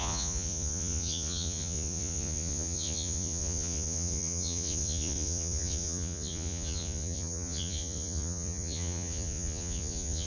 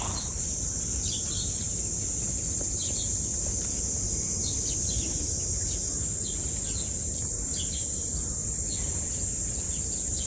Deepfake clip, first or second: first